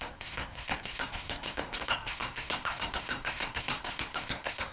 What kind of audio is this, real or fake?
fake